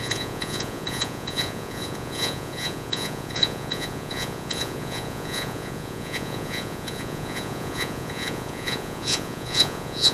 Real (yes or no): no